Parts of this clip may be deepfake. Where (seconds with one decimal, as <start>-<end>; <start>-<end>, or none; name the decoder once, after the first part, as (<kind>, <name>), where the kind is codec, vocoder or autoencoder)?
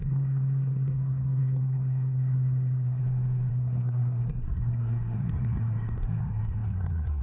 0.0-3.0 (codec, SNAC); 3.5-7.2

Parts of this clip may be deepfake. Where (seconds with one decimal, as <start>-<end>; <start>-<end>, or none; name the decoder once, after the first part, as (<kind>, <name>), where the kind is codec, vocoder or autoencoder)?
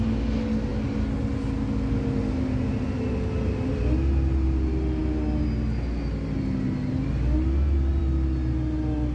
none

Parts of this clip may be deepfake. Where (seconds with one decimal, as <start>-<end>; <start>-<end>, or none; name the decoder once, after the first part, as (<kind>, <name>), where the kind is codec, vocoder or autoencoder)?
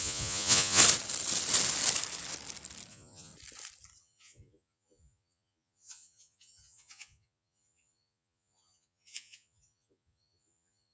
0.0-0.8 (vocoder, Vocos); 2.9-3.3; 4.0-10.9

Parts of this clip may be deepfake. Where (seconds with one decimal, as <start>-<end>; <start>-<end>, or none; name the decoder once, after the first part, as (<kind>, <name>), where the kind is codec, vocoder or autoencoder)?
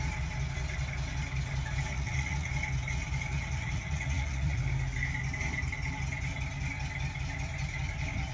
1.9-2.5 (vocoder, Vocos); 3.3-4.6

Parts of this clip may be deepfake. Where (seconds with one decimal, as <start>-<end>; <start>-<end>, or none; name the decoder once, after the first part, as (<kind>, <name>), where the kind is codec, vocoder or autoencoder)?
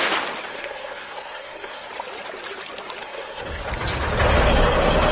0.5-1.9 (codec, SNAC); 3.0-3.6